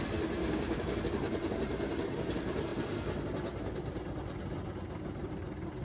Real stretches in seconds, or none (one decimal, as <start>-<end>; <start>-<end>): 0.0-0.4; 1.0-5.8